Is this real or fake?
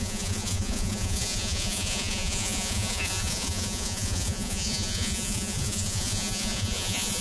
fake